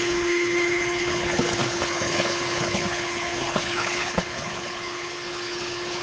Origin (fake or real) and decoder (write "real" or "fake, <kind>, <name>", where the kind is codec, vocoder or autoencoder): fake, codec, HILCodec